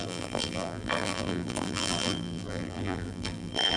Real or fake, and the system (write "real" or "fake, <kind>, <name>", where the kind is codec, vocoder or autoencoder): fake, vocoder, BigVGAN v2